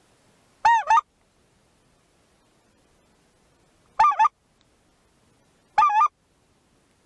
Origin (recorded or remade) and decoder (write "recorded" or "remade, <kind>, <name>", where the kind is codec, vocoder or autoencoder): recorded